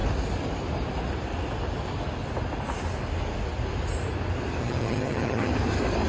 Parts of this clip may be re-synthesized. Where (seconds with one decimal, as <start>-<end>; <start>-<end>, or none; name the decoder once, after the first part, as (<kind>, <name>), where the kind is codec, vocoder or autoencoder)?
4.6-5.5 (vocoder, HiFi-GAN)